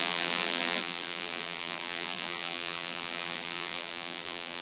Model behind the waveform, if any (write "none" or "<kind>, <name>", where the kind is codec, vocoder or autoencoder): vocoder, BigVGAN v2